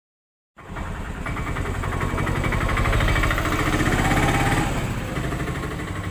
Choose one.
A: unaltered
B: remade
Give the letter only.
A